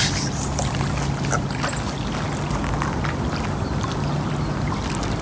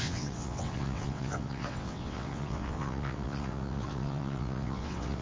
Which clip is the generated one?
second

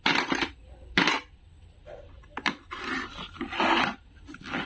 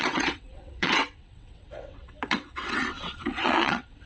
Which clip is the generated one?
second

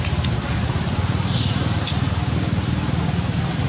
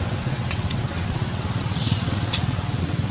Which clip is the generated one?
second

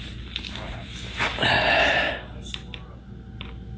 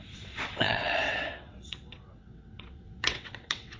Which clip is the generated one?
second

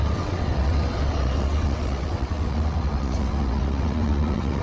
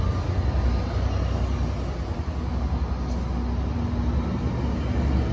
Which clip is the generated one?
first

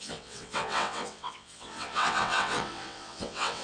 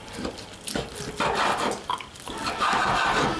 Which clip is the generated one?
first